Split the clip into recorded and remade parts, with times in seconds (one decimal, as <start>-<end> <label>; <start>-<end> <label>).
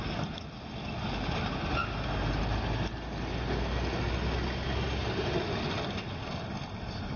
0.0-7.2 recorded